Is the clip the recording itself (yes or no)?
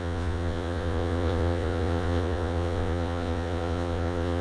no